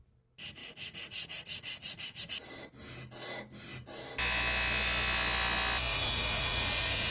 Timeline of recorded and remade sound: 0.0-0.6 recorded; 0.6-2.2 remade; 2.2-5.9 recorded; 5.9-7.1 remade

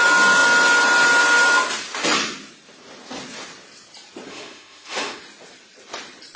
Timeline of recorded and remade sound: 0.0-4.3 recorded; 4.3-5.2 remade; 5.2-6.4 recorded

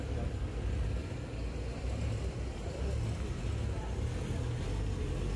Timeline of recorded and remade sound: 0.0-5.4 recorded

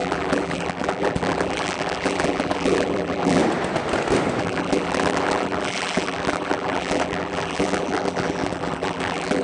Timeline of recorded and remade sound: 0.0-3.4 remade; 3.4-4.4 recorded; 4.4-9.4 remade

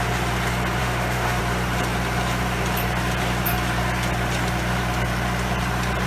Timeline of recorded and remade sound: 0.0-0.8 recorded; 0.8-1.4 remade; 1.4-6.1 recorded